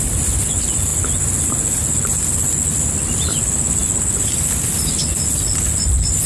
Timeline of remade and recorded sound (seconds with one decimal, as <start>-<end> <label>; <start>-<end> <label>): 0.0-6.3 recorded